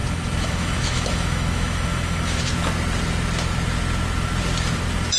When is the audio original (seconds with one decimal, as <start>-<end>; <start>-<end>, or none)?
2.4-5.2